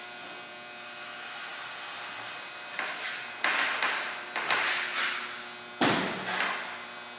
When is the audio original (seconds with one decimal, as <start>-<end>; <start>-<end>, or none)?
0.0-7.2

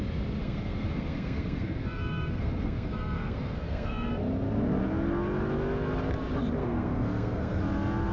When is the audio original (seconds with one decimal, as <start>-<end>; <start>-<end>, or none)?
0.0-0.4; 4.1-6.6; 7.6-8.1

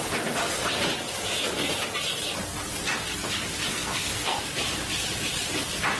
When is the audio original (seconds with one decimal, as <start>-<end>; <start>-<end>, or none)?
0.0-3.7; 4.5-6.0

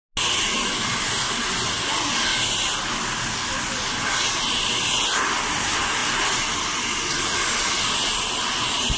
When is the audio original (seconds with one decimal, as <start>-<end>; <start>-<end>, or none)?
0.0-9.0

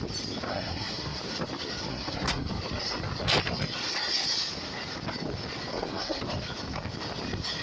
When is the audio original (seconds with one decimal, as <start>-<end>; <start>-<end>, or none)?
0.0-0.5; 1.2-1.9; 2.5-5.7; 6.2-7.6

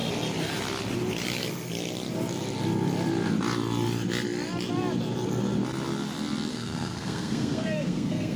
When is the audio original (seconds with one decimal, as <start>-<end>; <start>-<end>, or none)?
0.0-6.5